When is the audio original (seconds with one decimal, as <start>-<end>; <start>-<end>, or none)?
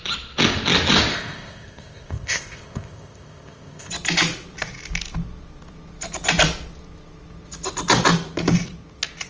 0.0-1.1; 3.9-9.3